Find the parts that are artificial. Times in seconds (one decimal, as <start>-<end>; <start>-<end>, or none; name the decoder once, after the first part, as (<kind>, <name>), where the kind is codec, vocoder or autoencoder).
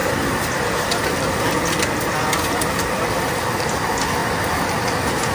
4.2-4.7 (vocoder, BigVGAN v2)